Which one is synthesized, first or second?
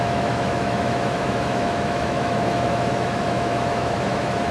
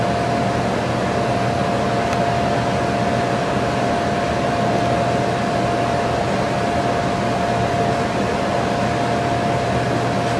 first